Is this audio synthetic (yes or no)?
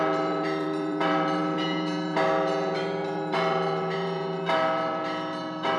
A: yes